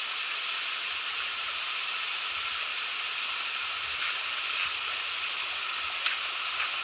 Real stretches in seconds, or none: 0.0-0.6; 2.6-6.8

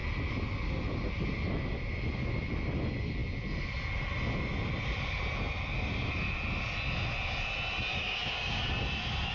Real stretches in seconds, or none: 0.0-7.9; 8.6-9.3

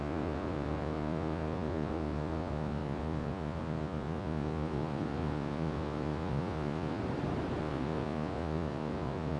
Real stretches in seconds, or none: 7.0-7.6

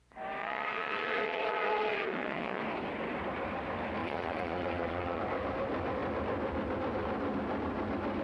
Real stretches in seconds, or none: 0.0-0.4; 2.6-4.0; 5.2-8.2

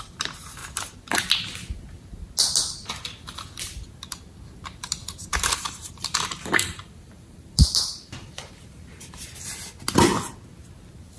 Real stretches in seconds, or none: 0.0-5.3; 9.2-11.2

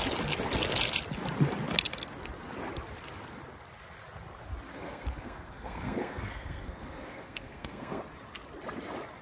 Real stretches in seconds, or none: 0.0-4.7; 8.0-9.2

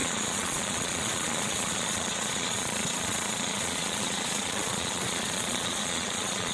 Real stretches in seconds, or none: none